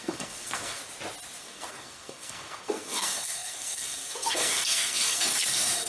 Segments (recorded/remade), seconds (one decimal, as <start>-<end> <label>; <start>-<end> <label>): 0.0-0.8 remade; 0.8-1.4 recorded; 1.4-5.9 remade

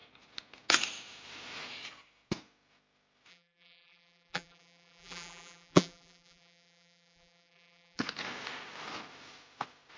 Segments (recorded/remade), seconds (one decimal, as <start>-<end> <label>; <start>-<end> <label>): 0.0-3.3 recorded; 3.3-8.0 remade; 8.0-10.0 recorded

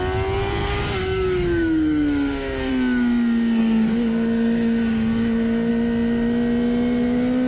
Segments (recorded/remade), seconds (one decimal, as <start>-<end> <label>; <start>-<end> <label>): 0.0-0.6 recorded; 0.6-2.7 remade; 2.7-3.6 recorded; 3.6-5.7 remade; 5.7-7.5 recorded

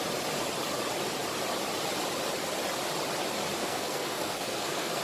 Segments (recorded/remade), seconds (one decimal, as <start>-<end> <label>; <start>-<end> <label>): 0.0-3.6 recorded; 3.6-5.0 remade

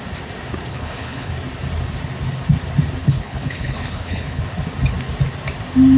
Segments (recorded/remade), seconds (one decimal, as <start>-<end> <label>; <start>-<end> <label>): 0.0-0.7 recorded; 0.7-1.3 remade; 1.3-3.0 recorded; 3.0-4.4 remade; 4.4-6.0 recorded